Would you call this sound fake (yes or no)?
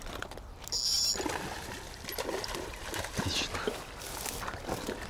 no